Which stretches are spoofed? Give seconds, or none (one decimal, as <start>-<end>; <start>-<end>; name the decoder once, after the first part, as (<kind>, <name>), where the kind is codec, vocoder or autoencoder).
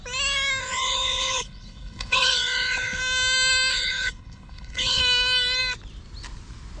0.6-3.0 (codec, HILCodec); 3.7-5.0